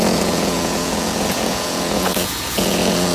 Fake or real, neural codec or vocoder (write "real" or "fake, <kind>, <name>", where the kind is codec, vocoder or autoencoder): fake, vocoder, Vocos